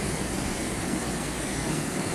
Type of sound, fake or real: fake